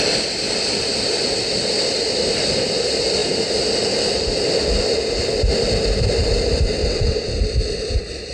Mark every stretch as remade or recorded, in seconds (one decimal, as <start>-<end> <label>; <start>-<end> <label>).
0.0-6.8 recorded; 6.8-7.3 remade; 7.3-8.3 recorded